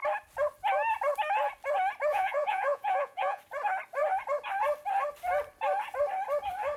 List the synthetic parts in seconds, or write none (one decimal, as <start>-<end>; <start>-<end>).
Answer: 2.1-3.4